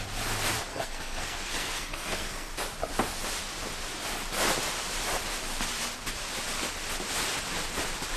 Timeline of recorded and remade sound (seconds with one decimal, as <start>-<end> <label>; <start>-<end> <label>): 0.0-0.7 recorded; 0.7-2.5 remade; 2.5-8.2 recorded